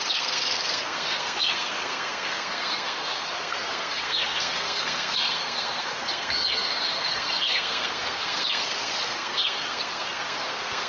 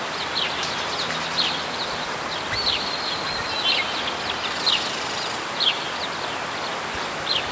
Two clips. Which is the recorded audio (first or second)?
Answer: second